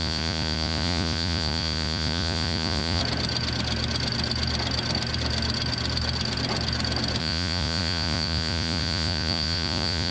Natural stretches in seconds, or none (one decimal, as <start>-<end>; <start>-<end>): 3.0-7.2